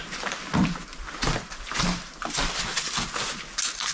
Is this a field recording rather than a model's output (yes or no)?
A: yes